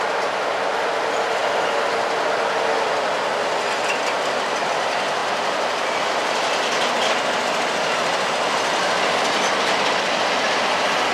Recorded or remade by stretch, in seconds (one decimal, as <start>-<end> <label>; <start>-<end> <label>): 0.0-11.1 recorded